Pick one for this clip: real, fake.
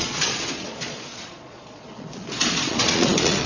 fake